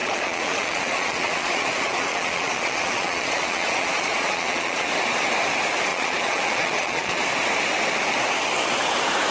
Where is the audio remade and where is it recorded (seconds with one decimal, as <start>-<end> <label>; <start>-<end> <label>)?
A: 0.0-4.9 remade; 4.9-5.9 recorded; 5.9-7.2 remade; 7.2-9.3 recorded